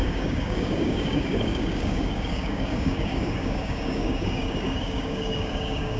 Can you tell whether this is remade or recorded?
remade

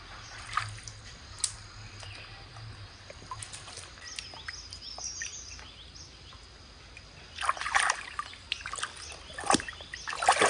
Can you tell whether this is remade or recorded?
recorded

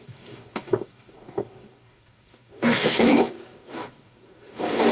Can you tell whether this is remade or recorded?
remade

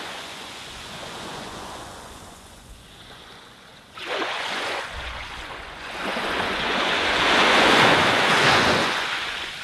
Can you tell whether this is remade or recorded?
remade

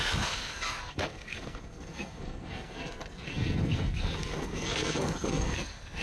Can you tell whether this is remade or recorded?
remade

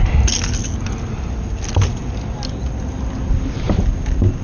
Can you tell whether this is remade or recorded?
recorded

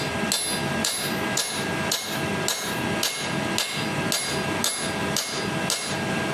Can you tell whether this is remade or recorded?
recorded